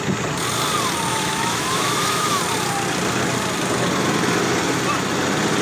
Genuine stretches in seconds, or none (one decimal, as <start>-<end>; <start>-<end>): 0.0-1.1; 2.4-5.6

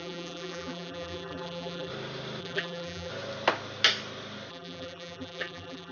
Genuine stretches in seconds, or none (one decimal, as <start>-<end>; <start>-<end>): 1.9-2.4; 3.1-4.5

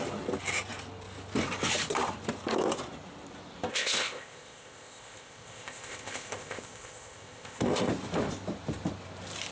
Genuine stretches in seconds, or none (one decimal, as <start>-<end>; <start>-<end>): 0.0-3.7; 7.9-9.5